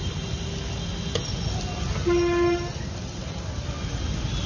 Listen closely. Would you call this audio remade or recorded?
recorded